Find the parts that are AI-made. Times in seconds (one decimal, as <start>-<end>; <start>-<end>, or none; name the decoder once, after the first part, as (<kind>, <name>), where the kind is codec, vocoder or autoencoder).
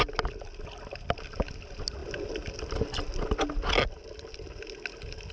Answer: none